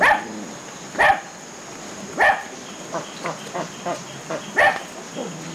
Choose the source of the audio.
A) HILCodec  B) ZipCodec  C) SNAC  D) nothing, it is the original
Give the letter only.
D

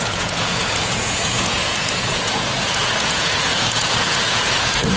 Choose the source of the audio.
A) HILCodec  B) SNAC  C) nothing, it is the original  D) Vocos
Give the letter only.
D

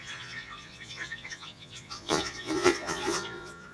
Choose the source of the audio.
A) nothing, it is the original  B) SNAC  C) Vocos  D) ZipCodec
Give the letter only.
C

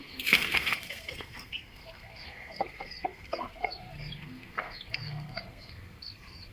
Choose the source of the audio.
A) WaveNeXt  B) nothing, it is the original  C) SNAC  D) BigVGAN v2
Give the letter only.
C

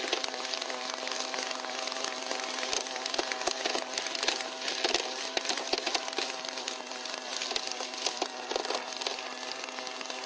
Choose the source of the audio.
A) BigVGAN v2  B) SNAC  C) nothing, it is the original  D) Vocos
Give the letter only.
C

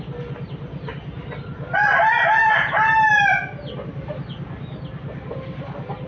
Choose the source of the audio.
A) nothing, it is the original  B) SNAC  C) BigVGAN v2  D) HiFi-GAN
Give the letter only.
A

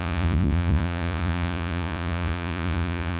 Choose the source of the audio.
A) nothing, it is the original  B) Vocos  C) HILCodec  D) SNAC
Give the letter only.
B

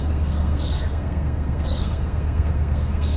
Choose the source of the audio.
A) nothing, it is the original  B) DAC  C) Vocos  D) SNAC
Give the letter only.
D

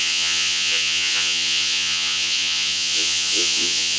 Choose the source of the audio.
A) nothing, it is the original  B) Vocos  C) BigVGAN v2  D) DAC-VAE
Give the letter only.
B